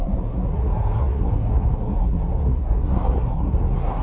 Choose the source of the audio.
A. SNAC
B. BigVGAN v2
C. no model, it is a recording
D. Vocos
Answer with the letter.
A